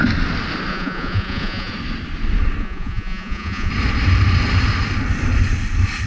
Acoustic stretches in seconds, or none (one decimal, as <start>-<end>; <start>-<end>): 0.0-0.7; 1.7-2.6; 3.7-6.1